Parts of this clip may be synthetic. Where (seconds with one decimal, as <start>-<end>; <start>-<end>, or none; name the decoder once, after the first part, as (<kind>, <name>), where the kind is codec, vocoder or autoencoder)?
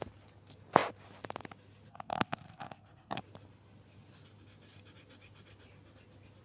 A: 1.9-3.2 (codec, SNAC)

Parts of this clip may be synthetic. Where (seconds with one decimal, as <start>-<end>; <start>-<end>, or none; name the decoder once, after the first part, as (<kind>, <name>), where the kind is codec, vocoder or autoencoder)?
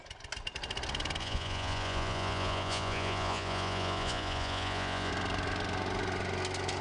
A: 1.2-5.1 (vocoder, Vocos)